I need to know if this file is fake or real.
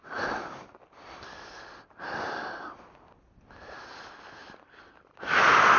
real